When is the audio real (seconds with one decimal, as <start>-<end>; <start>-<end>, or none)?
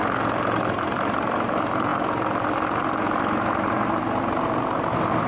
none